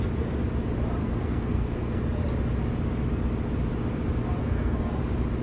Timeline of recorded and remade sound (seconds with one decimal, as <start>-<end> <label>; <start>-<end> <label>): 0.0-1.0 recorded; 1.0-2.0 remade; 2.0-4.4 recorded; 4.4-4.9 remade; 4.9-5.4 recorded